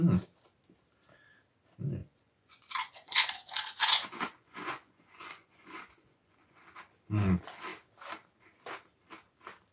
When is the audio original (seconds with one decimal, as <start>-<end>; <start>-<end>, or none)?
0.0-2.0; 6.6-9.7